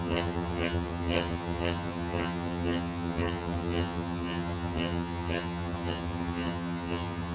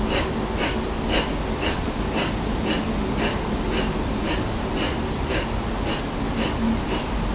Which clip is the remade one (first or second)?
first